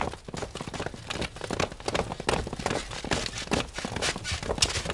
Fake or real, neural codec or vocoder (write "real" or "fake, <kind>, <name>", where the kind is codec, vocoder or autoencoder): real